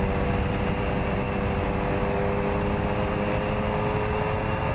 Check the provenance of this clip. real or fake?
real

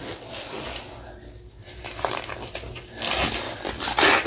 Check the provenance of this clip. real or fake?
real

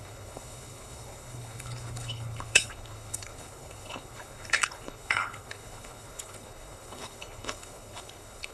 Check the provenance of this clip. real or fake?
fake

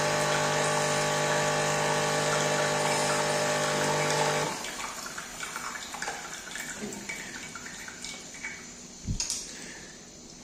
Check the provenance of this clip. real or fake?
real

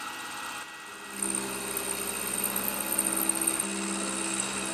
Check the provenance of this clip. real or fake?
real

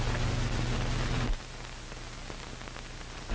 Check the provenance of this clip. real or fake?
real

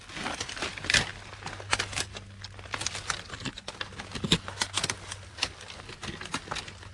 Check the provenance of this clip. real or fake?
real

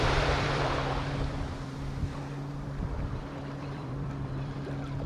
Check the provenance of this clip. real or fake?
fake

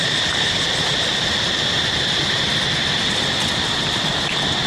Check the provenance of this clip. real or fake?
real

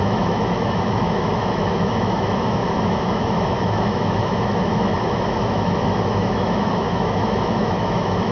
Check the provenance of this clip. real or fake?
fake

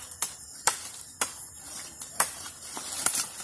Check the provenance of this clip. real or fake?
real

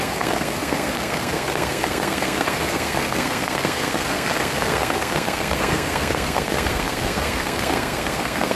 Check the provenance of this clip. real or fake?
fake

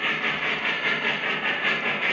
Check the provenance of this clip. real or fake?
real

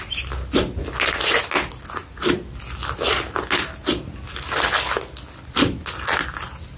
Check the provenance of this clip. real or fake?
real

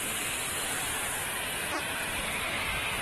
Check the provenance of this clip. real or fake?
fake